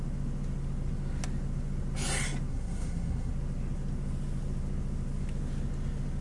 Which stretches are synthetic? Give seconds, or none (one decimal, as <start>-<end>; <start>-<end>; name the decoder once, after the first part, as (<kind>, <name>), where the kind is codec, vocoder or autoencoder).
2.5-3.3 (codec, SNAC)

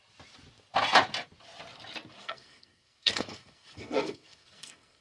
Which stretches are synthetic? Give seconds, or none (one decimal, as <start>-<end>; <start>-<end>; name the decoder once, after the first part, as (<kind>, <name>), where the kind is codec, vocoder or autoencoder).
2.2-5.0 (codec, SNAC)

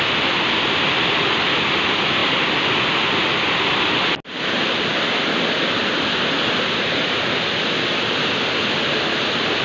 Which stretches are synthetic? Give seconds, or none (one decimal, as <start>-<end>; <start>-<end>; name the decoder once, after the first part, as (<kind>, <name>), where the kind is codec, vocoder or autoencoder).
none